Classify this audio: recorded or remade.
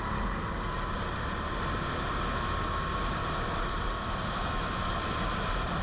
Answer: recorded